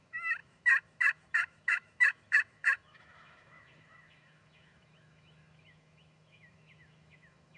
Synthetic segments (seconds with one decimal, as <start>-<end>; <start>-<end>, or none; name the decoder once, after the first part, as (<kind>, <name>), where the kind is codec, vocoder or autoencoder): 0.0-7.6 (autoencoder, DAC-VAE)